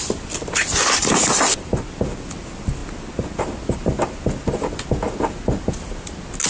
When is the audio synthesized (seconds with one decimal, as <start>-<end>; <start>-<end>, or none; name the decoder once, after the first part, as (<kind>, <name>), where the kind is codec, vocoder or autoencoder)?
0.0-0.6 (vocoder, BigVGAN v2); 1.0-1.7